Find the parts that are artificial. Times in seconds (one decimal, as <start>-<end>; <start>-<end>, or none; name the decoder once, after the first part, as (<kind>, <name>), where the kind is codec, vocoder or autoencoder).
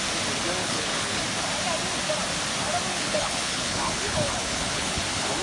0.6-1.2 (codec, HILCodec); 2.9-5.0